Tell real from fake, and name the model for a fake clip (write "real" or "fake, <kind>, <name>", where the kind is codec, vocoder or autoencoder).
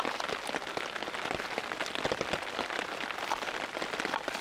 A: real